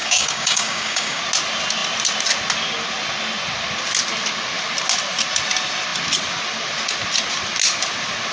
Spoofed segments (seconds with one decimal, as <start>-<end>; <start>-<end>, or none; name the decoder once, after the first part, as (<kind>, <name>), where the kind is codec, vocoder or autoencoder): 0.0-1.2 (codec, DAC)